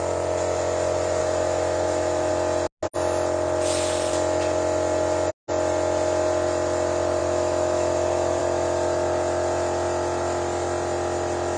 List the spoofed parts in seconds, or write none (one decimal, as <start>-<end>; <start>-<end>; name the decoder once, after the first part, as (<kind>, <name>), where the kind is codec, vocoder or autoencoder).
1.2-2.3 (autoencoder, DAC-VAE); 7.2-8.4